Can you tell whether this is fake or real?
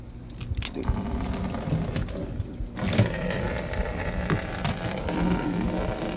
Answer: real